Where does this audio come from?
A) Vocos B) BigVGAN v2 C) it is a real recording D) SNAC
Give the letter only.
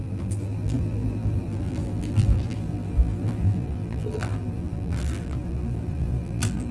B